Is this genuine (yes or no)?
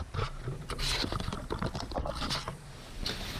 no